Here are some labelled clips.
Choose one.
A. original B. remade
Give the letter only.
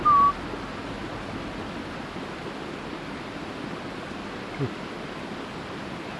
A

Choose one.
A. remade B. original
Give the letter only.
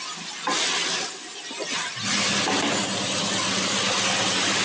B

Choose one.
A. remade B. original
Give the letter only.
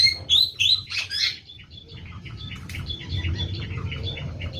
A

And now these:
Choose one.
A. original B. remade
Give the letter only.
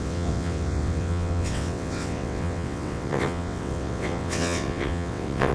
B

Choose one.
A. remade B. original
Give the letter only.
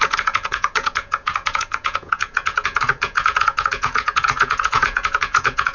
A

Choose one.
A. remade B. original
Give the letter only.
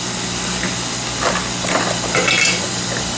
B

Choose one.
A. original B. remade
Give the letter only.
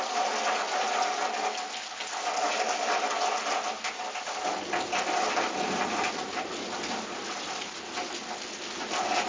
A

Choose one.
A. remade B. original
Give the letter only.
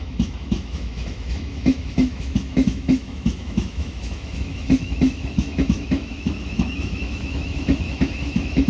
A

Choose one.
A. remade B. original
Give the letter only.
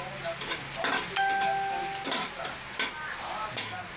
B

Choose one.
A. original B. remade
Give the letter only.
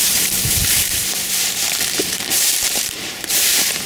B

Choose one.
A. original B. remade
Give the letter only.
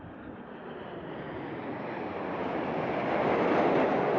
A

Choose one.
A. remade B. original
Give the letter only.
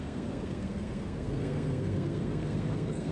A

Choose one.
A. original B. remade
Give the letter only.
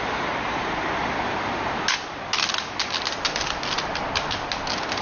A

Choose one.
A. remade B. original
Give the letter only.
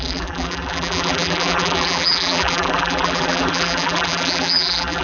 A